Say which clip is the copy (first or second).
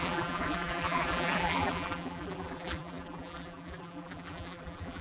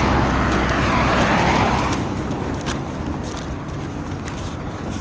first